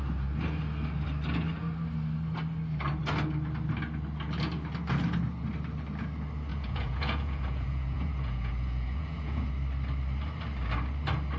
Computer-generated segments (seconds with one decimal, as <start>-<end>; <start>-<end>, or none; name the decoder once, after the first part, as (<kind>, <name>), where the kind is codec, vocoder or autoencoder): 6.5-9.5 (vocoder, Vocos)